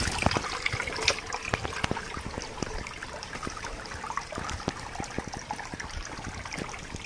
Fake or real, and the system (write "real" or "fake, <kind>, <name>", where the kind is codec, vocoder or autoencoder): real